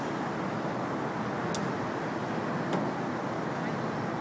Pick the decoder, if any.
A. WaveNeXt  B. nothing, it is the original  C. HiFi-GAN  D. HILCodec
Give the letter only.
B